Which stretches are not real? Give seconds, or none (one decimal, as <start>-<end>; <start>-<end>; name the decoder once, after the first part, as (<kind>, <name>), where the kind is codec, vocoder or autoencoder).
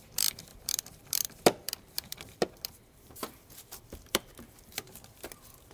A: 0.0-5.7 (vocoder, BigVGAN v2)